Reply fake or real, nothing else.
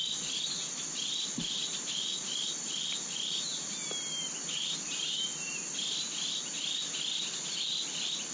real